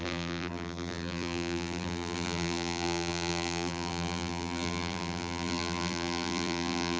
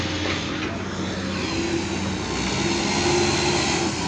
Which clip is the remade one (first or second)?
first